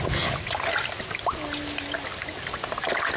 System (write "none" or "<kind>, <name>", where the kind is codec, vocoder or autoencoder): none